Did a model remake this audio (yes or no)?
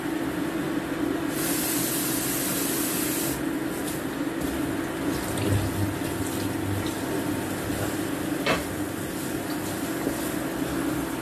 no